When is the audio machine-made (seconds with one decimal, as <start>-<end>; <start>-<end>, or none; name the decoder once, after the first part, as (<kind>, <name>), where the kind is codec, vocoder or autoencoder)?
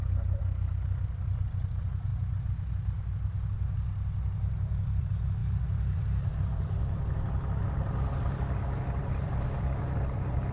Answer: 5.4-7.4 (vocoder, BigVGAN v2)